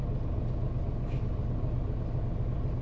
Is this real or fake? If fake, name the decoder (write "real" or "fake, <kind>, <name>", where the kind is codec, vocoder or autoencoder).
real